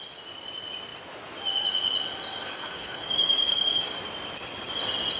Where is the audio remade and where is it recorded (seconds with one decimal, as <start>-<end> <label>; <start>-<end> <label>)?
0.0-2.4 recorded; 2.4-4.0 remade; 4.0-5.2 recorded